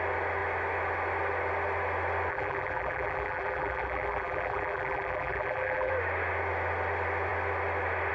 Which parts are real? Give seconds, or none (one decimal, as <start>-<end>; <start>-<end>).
0.0-2.3; 5.9-8.1